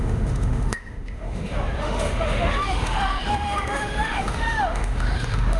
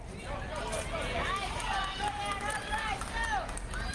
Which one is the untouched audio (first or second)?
second